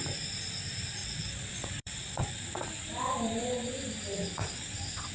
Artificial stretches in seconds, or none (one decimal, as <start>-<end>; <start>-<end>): 1.0-2.3

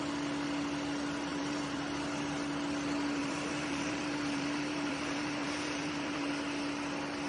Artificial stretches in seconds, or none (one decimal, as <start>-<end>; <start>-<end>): 1.3-1.8; 3.2-6.3

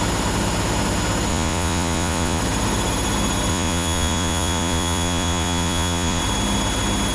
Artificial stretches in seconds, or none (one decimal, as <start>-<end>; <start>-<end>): 1.3-2.4; 3.5-6.2

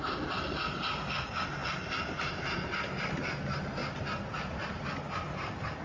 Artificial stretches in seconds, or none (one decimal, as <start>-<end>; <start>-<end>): 3.8-4.8

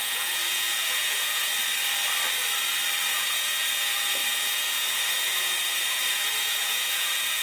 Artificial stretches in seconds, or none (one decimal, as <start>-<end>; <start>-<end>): 0.0-1.5; 3.1-7.4